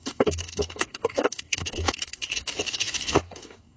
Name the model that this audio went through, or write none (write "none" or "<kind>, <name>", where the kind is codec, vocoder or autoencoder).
codec, DAC